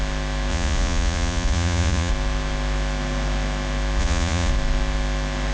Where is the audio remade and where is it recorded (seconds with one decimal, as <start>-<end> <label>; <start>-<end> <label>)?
0.0-0.5 recorded; 0.5-2.1 remade; 2.1-4.0 recorded; 4.0-4.5 remade; 4.5-5.5 recorded